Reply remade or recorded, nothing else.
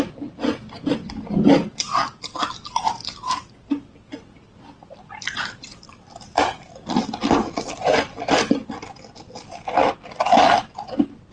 recorded